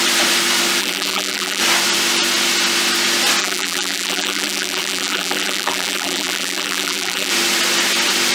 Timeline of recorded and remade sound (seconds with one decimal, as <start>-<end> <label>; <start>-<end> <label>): 0.0-0.8 recorded; 0.8-1.6 remade; 1.6-3.4 recorded; 3.4-7.3 remade; 7.3-8.3 recorded